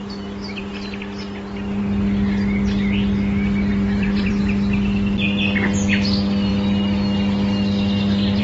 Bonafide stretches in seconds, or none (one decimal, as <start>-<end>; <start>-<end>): 0.0-3.7; 4.4-8.4